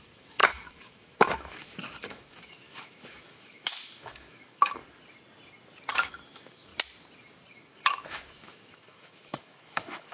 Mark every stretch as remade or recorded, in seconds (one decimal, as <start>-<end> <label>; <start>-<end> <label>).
0.0-4.8 remade; 4.8-5.9 recorded; 5.9-6.7 remade; 6.7-7.5 recorded; 7.5-10.1 remade